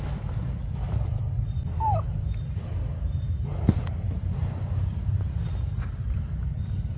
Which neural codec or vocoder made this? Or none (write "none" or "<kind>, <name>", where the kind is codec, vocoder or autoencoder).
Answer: none